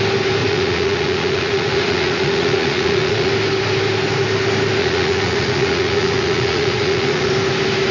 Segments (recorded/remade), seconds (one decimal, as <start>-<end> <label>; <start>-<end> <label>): 0.0-0.4 recorded; 0.4-3.3 remade; 3.3-4.8 recorded; 4.8-7.3 remade; 7.3-7.9 recorded

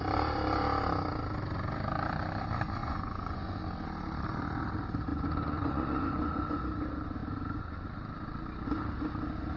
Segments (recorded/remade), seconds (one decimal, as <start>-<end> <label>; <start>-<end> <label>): 0.0-2.8 recorded; 2.8-3.6 remade; 3.6-5.1 recorded; 5.1-6.6 remade; 6.6-9.6 recorded